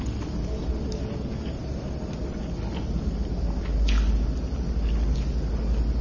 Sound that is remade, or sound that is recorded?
recorded